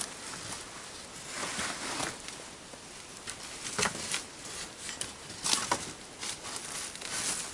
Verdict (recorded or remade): recorded